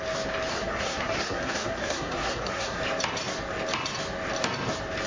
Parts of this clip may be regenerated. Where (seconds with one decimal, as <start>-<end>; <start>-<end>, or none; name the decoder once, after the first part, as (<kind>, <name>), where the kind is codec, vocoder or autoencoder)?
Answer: 0.5-2.8 (codec, SNAC)